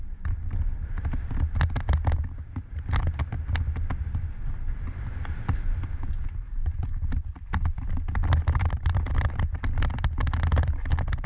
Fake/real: real